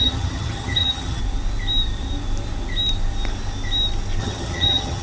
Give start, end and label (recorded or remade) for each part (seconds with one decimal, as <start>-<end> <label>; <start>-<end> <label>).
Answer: 0.0-1.2 remade; 1.2-4.2 recorded; 4.2-5.0 remade